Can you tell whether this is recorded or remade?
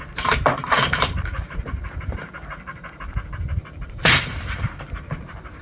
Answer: remade